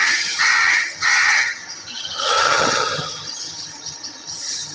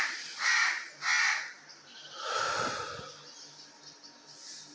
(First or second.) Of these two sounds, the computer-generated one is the first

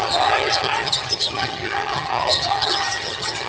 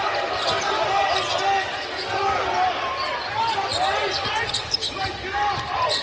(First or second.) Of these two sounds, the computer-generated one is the first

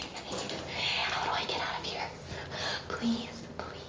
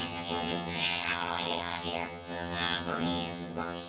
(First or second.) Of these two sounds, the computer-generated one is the second